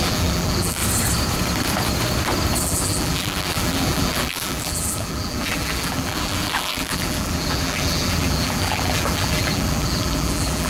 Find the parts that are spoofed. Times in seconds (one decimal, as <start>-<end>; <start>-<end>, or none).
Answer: 0.0-0.8; 2.6-10.7